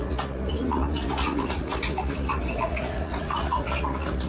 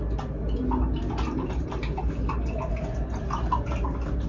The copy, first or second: first